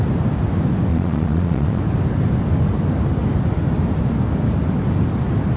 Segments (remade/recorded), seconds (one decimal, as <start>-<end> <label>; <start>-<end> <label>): 0.0-0.9 recorded; 0.9-1.8 remade; 1.8-5.6 recorded